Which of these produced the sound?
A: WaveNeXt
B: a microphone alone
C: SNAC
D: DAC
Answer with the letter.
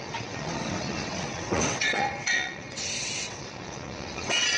A